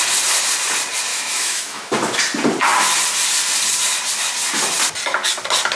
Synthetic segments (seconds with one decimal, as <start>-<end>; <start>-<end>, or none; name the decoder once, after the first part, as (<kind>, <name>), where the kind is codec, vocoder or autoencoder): 1.1-1.9 (autoencoder, DAC-VAE)

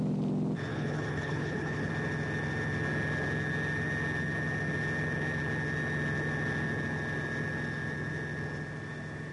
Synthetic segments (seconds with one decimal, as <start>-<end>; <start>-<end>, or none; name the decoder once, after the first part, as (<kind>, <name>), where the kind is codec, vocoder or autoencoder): 0.7-1.9 (codec, HILCodec)

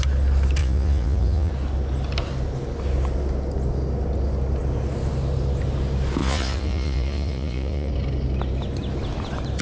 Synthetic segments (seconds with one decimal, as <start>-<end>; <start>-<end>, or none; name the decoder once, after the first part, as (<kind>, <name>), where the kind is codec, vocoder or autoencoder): 0.6-1.5 (vocoder, Vocos); 6.2-7.9

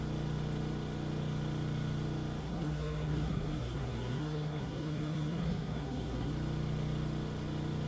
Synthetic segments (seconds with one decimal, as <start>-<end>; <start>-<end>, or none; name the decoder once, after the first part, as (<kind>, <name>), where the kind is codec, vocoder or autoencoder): 2.4-6.3 (codec, SNAC)